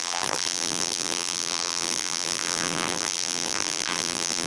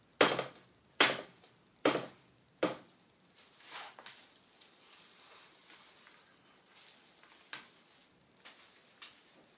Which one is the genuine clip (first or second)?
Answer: second